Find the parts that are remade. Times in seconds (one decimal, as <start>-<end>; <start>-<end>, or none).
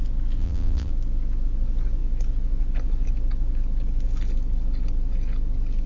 0.4-0.9